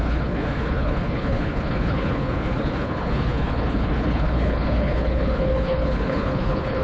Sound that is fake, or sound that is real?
fake